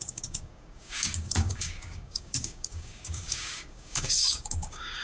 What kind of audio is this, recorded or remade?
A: remade